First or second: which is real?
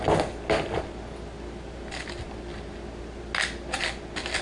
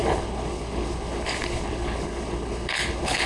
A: first